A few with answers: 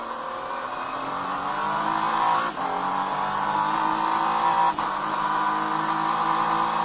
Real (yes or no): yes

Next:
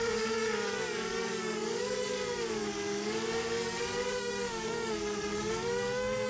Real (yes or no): no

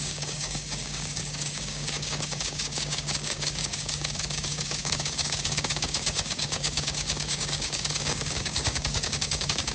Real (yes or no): no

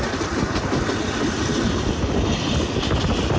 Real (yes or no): yes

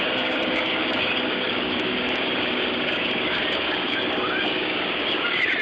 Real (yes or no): no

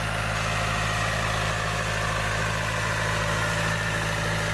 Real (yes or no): yes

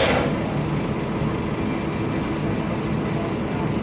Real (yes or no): yes